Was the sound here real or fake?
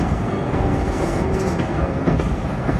fake